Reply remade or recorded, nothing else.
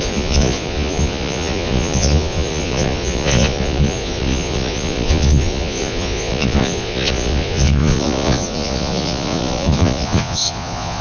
remade